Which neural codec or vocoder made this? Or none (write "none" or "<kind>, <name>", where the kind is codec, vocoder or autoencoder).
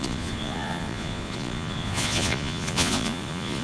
vocoder, Vocos